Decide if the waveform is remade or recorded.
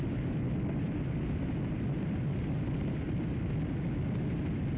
recorded